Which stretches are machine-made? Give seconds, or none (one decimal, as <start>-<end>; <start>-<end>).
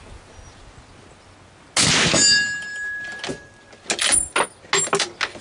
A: none